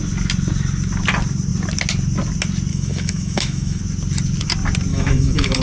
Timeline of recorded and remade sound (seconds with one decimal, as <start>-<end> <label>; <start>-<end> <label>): 0.0-2.7 recorded; 2.7-3.8 remade; 3.8-4.9 recorded; 4.9-5.6 remade